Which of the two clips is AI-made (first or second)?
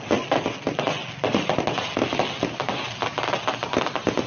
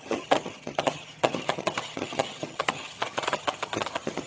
second